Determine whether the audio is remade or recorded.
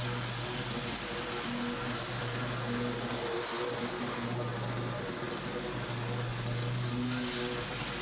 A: recorded